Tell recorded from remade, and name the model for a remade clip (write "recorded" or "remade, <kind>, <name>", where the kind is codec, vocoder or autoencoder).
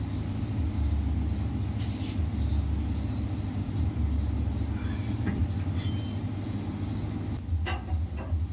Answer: recorded